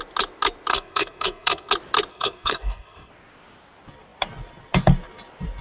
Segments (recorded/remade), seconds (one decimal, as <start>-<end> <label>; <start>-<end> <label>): 0.0-0.7 recorded; 0.7-1.7 remade; 1.7-2.1 recorded; 2.1-3.1 remade; 3.1-5.6 recorded